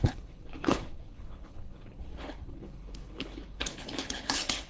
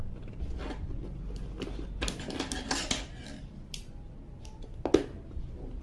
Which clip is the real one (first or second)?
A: second